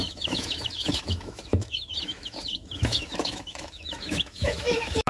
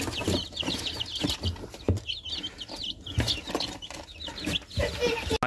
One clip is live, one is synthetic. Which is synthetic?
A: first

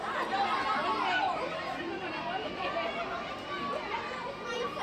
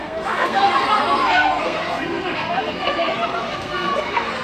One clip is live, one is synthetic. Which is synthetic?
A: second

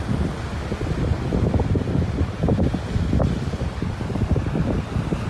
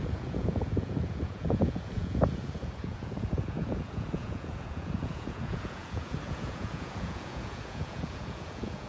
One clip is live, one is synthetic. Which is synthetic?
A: second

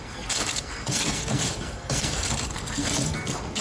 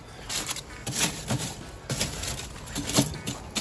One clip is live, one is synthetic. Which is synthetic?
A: first